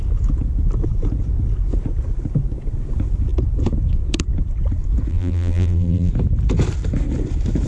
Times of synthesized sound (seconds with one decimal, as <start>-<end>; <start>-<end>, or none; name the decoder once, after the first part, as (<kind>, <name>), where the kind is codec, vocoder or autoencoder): 5.1-6.1 (vocoder, BigVGAN v2)